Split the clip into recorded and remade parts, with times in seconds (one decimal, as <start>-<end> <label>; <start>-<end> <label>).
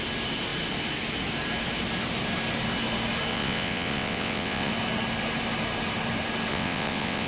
0.0-3.3 recorded; 3.3-4.7 remade; 4.7-6.5 recorded; 6.5-7.3 remade